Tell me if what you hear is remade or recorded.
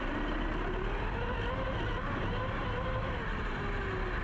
recorded